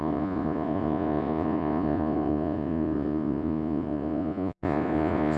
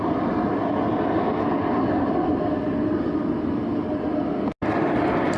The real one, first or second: second